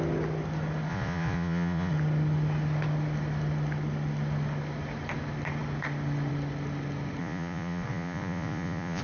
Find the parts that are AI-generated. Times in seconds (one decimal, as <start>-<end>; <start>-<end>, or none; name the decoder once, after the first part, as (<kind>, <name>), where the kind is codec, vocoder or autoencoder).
0.9-1.9 (vocoder, Vocos); 7.2-9.0